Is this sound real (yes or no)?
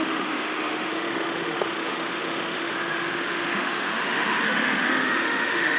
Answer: no